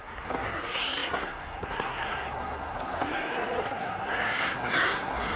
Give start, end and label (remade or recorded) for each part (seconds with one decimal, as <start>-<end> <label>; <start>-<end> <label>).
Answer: 0.0-5.4 remade